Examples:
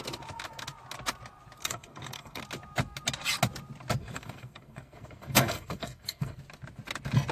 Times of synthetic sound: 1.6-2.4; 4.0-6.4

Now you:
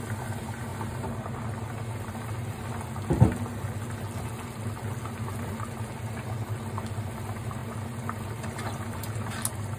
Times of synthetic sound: none

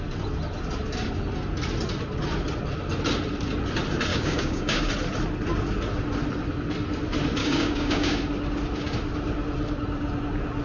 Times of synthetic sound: 4.1-4.9; 7.4-8.2

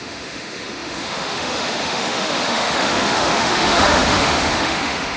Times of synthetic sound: 0.0-5.2

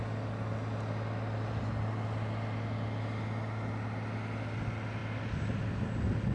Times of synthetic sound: none